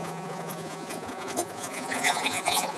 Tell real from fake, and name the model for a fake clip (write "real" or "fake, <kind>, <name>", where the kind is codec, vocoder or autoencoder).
fake, vocoder, Vocos